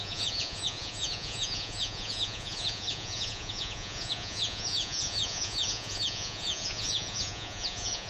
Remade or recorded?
remade